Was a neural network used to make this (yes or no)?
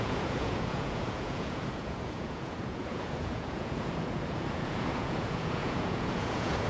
yes